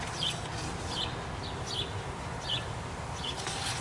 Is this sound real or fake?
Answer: real